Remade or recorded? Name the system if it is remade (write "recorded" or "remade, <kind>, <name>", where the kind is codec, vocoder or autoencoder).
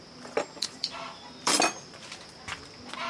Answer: remade, vocoder, BigVGAN v2